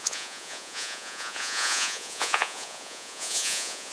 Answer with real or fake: fake